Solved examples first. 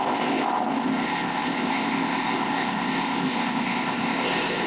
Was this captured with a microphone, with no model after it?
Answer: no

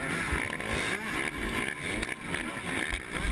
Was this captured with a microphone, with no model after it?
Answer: yes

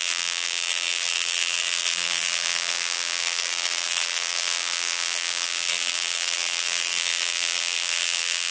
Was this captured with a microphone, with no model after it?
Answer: no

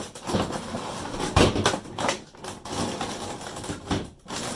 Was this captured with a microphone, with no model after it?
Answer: yes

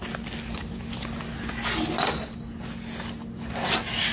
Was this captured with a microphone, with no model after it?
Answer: yes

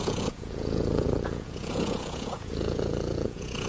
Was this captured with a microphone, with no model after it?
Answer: no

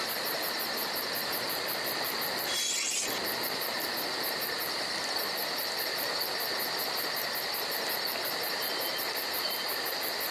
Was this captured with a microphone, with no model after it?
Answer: yes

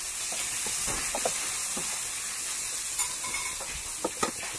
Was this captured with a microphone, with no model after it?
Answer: yes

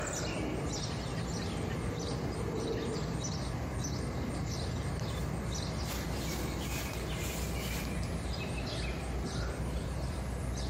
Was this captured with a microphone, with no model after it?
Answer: yes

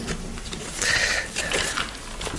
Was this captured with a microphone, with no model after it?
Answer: yes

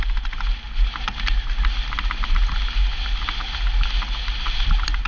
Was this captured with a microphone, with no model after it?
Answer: yes